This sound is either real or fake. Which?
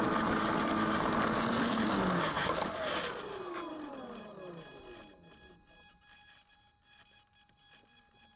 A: real